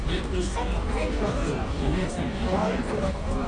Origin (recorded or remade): remade